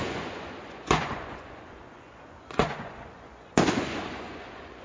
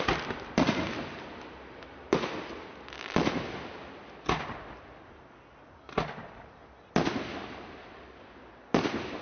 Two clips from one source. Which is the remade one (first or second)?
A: first